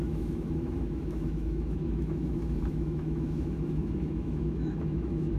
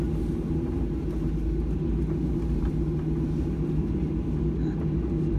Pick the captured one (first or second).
second